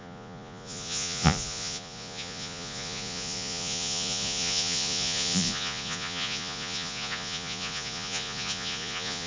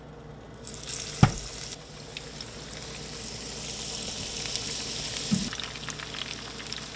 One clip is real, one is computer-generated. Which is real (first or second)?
second